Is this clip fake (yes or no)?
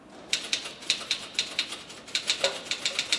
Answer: no